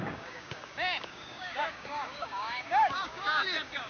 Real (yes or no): no